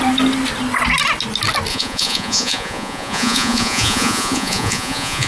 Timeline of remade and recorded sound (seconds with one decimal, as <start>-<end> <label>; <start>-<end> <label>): 0.0-1.7 recorded; 1.7-5.3 remade